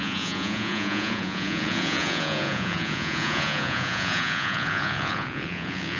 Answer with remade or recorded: remade